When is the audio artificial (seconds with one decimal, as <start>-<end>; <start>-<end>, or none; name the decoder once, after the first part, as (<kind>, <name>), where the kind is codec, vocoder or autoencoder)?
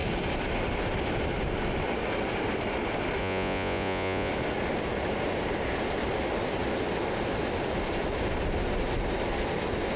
3.2-4.3 (vocoder, Vocos)